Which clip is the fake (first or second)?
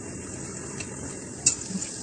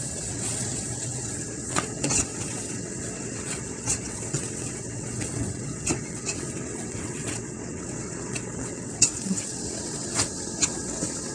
second